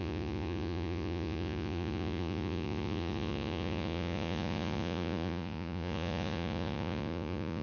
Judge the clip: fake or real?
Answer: fake